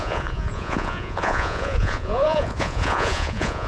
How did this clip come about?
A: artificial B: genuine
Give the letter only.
A